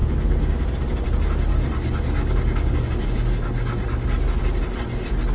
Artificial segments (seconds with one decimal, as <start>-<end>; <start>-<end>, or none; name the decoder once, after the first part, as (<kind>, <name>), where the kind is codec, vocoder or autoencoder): 1.5-4.4 (codec, DAC)